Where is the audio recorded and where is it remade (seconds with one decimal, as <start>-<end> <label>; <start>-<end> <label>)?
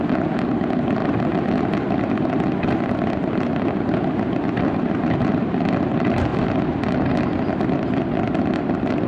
0.0-9.1 recorded